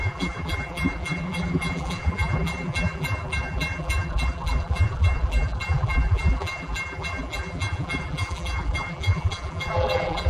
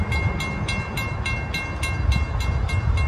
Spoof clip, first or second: first